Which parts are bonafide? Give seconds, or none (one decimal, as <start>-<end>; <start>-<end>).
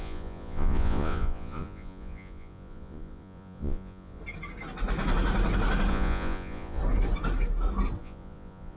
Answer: 4.2-5.9; 6.8-8.0